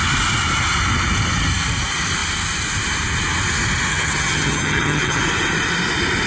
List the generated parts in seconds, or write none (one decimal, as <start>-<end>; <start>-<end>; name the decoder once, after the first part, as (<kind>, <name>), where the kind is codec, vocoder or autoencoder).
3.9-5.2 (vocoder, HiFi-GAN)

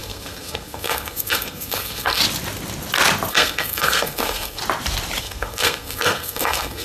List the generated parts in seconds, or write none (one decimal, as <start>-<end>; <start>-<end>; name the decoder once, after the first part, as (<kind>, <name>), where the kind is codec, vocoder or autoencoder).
0.0-2.2 (codec, SNAC); 3.3-4.6; 5.2-6.8

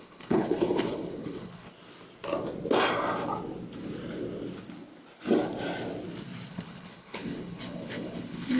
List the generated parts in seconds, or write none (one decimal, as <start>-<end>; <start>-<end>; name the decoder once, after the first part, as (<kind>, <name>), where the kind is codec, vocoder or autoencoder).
0.0-1.7 (codec, HILCodec); 6.5-8.6

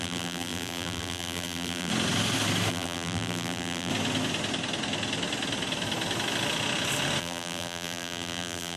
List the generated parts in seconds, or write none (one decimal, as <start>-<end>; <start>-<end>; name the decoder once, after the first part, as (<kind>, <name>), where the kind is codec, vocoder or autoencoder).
0.0-1.9 (vocoder, BigVGAN v2); 2.7-3.9; 7.2-8.8

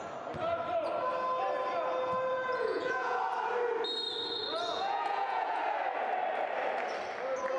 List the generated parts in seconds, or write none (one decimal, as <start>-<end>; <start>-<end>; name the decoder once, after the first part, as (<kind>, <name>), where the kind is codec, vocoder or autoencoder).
2.3-3.2 (vocoder, Vocos); 4.7-5.6

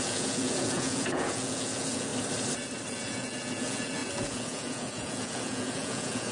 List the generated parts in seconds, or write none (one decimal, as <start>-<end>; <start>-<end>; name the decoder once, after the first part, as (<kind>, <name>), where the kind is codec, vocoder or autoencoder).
0.0-2.1 (vocoder, Vocos); 2.9-6.3

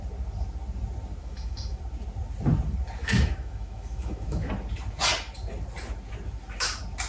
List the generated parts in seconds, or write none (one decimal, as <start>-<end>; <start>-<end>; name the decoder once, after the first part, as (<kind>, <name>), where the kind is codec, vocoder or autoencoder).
1.2-1.8 (autoencoder, DAC-VAE); 3.0-4.5